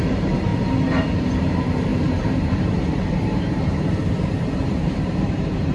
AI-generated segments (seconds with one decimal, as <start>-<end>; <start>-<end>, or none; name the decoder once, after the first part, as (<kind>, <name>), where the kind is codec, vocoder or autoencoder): 0.0-0.5 (vocoder, BigVGAN v2); 1.1-5.7